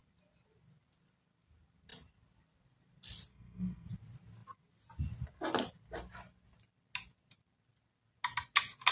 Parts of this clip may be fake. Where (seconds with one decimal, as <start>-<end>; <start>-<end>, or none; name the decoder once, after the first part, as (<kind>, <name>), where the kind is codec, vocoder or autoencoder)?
3.3-3.9 (codec, SNAC)